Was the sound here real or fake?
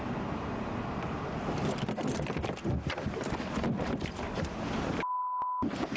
real